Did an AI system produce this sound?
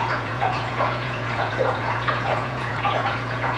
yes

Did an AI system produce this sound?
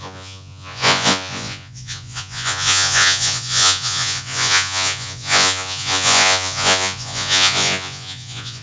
yes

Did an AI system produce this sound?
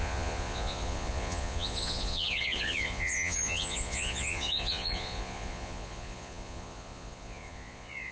yes